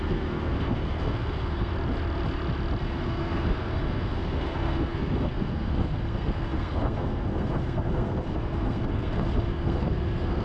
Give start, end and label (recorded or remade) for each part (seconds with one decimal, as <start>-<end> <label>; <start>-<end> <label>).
0.0-1.7 remade; 1.7-2.8 recorded; 2.8-10.4 remade